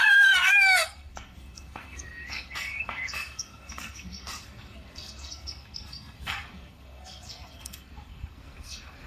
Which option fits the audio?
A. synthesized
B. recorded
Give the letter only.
A